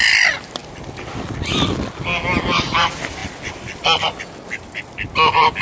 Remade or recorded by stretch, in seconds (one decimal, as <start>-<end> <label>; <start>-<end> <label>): 0.0-5.6 recorded